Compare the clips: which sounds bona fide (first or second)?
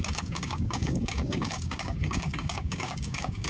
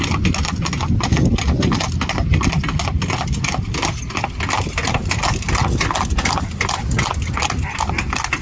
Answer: second